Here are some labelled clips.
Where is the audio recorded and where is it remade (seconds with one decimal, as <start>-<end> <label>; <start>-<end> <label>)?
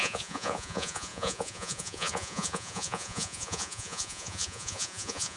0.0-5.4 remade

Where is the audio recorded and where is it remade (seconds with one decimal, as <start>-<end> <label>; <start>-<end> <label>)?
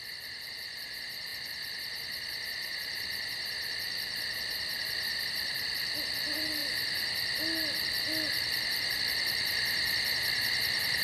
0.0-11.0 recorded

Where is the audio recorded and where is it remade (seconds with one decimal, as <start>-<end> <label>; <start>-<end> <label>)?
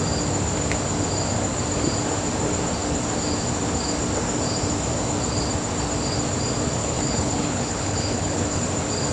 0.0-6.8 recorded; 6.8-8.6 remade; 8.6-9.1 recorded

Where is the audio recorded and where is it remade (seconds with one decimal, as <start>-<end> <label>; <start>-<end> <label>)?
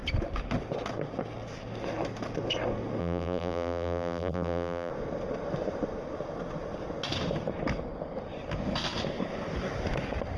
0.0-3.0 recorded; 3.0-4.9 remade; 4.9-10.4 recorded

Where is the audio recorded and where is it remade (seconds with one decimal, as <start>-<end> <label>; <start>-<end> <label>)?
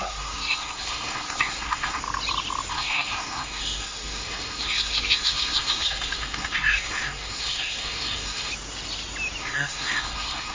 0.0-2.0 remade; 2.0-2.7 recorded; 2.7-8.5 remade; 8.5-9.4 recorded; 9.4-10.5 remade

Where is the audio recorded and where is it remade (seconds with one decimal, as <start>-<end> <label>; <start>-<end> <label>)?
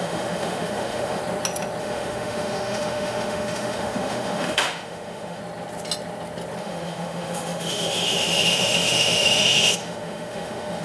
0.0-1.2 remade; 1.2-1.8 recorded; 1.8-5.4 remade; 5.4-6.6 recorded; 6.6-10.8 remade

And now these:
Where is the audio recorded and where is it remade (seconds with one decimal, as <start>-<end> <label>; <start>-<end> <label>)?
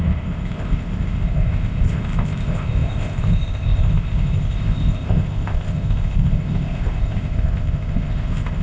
0.0-8.6 remade